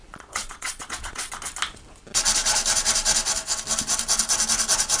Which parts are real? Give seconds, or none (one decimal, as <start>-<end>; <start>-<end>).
1.3-5.0